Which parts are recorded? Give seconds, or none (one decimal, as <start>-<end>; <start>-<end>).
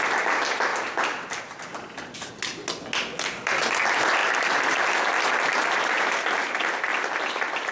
0.0-0.7; 1.4-4.2; 6.0-6.9